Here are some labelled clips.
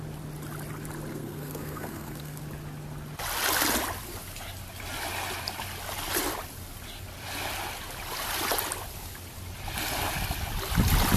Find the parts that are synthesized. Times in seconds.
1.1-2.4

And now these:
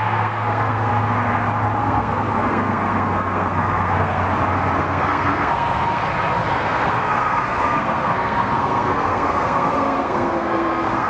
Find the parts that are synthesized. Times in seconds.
0.0-0.9; 1.8-4.2; 4.8-6.0; 6.5-11.1

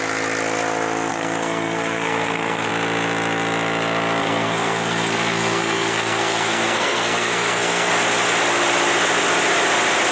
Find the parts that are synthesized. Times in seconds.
1.1-2.7; 4.2-7.9

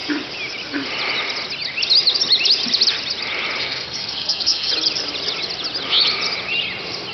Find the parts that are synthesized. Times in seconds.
3.6-4.7